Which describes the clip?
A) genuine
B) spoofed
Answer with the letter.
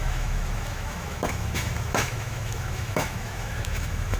B